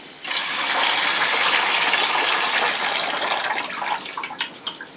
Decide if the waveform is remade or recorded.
recorded